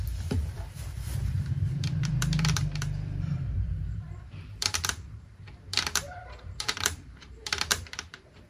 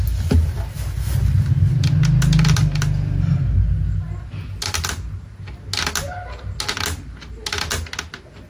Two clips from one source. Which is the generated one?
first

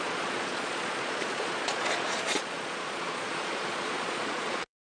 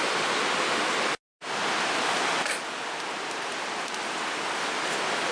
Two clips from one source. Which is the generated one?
first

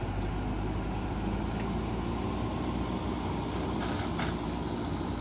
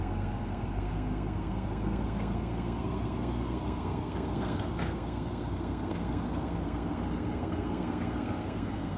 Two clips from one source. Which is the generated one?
second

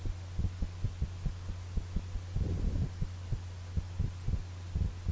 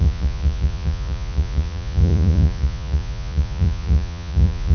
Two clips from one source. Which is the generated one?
second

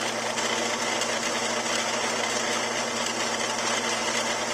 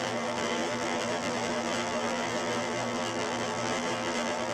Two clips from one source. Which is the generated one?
second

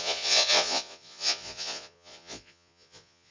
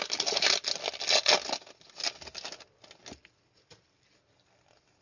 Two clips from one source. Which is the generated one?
first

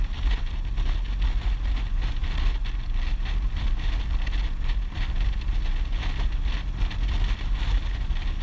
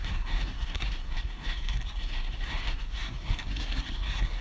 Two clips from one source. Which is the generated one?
second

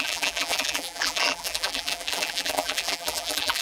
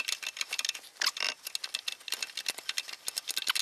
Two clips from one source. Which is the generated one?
first